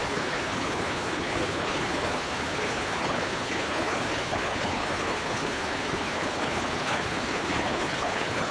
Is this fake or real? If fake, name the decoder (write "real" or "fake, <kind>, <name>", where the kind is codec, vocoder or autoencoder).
fake, codec, HILCodec